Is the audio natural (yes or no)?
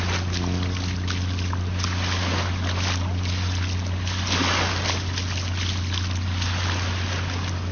yes